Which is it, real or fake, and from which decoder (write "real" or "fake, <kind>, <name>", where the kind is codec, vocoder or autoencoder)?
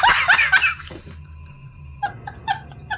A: fake, vocoder, BigVGAN v2